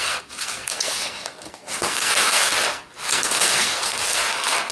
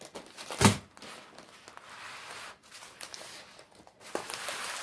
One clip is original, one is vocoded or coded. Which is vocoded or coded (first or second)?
first